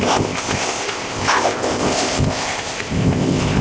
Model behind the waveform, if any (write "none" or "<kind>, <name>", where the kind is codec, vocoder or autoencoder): codec, ZipCodec